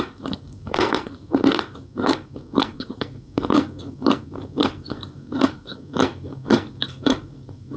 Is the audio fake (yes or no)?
yes